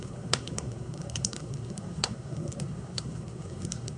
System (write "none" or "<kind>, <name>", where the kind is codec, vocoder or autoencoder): codec, SNAC